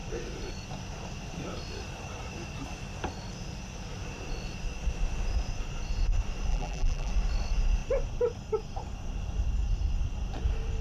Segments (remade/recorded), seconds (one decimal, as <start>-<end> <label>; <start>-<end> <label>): 0.0-6.5 recorded; 6.5-7.1 remade; 7.1-10.8 recorded